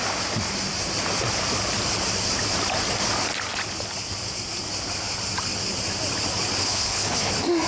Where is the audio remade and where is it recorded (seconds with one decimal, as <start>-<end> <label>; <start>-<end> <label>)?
0.0-6.6 recorded; 6.6-7.3 remade; 7.3-7.7 recorded